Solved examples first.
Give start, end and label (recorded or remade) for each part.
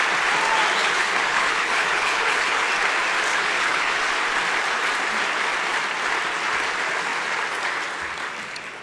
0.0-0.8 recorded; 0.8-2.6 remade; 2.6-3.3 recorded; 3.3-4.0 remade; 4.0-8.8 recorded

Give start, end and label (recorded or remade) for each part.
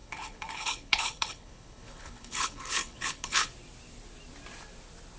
0.0-3.5 remade; 3.5-5.2 recorded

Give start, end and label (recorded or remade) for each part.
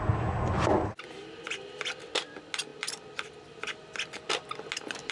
0.0-5.1 recorded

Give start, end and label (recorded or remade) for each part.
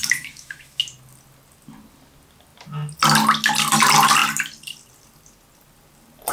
0.0-0.8 remade; 0.8-6.3 recorded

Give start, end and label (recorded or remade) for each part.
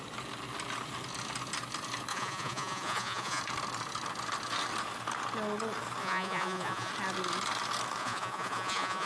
0.0-2.1 recorded; 2.1-3.4 remade; 3.4-6.0 recorded; 6.0-6.9 remade; 6.9-8.0 recorded; 8.0-9.1 remade